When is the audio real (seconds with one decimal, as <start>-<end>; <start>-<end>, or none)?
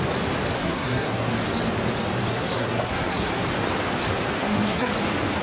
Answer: 0.0-0.6; 1.3-2.3; 3.3-4.4; 4.9-5.4